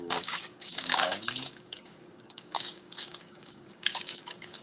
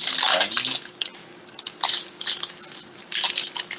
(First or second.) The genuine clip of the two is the second